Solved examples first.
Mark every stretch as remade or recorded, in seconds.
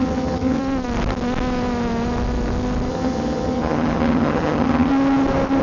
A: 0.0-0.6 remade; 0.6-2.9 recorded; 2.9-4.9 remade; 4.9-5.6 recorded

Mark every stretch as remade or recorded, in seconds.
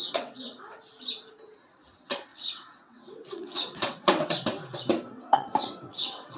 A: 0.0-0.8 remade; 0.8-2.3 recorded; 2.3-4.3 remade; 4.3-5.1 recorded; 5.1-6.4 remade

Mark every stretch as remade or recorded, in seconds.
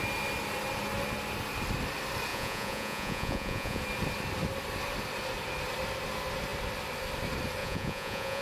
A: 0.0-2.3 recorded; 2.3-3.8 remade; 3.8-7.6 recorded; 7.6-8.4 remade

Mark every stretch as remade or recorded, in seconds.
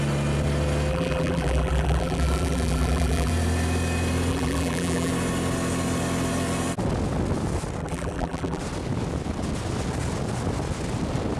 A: 0.0-0.9 recorded; 0.9-3.3 remade; 3.3-4.3 recorded; 4.3-5.1 remade; 5.1-7.8 recorded; 7.8-8.6 remade; 8.6-11.4 recorded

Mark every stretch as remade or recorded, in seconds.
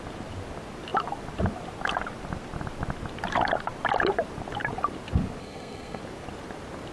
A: 0.0-5.4 recorded; 5.4-6.0 remade; 6.0-6.9 recorded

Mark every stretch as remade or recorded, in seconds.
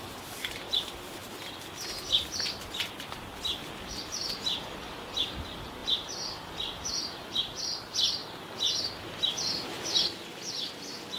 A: 0.0-1.2 remade; 1.2-4.1 recorded; 4.1-8.2 remade; 8.2-11.2 recorded